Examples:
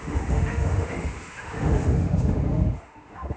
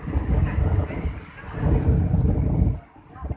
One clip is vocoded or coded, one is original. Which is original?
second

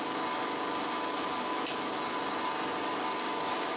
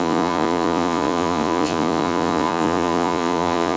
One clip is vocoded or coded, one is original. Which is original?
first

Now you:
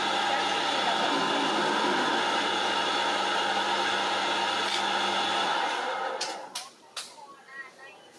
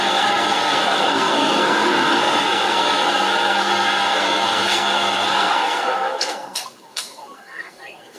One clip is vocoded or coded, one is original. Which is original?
first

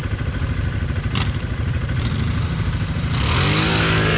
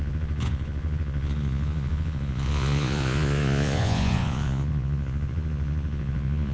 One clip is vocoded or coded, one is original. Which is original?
first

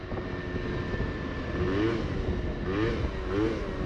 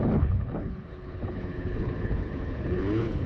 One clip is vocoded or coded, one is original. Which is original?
first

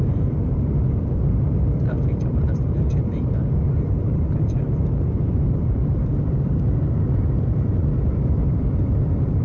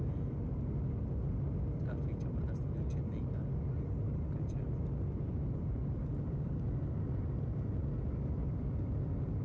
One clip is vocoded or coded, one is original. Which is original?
second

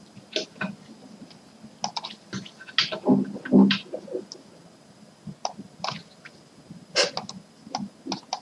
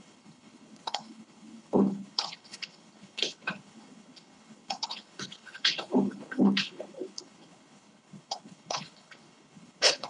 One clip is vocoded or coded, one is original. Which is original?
first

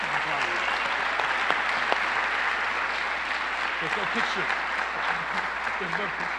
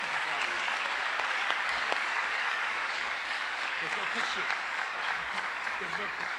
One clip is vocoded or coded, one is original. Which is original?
first